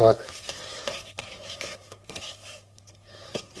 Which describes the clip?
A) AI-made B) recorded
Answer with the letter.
A